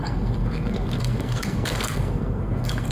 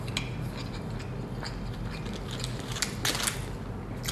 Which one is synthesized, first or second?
first